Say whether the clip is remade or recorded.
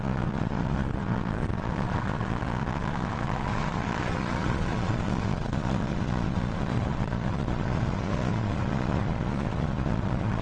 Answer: remade